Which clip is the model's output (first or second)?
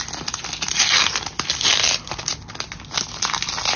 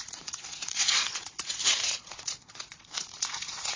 second